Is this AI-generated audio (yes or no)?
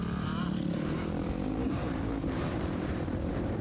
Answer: yes